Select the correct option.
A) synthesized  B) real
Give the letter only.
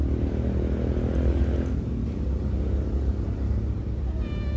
B